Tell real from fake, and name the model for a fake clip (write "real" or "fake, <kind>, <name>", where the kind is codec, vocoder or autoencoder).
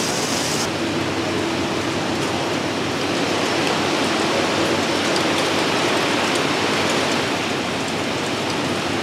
real